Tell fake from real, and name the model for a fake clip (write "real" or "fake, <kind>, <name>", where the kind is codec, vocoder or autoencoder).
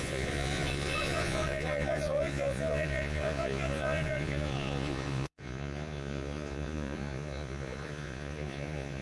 fake, vocoder, Vocos